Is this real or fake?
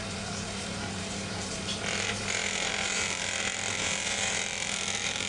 fake